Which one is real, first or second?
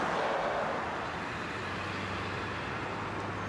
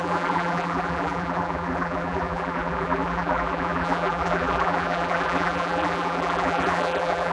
first